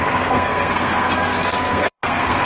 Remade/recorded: remade